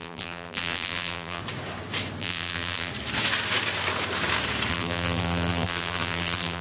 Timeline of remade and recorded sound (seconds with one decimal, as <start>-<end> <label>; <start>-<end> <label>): 0.0-1.4 remade; 1.4-2.2 recorded; 2.2-2.9 remade; 2.9-4.7 recorded; 4.7-6.6 remade